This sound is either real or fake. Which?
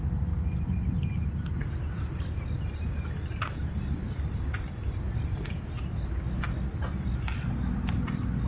real